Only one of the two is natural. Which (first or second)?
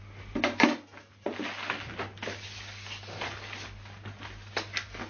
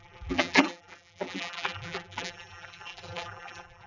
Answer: first